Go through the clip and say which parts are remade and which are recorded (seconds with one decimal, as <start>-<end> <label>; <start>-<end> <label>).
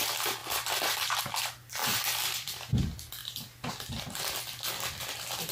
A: 0.0-0.4 recorded; 0.4-1.2 remade; 1.2-1.8 recorded; 1.8-2.7 remade; 2.7-5.5 recorded